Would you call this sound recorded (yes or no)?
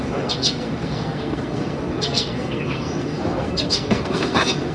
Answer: no